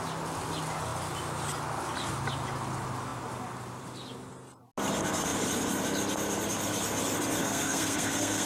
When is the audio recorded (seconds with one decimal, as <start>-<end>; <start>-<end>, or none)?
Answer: 0.0-7.4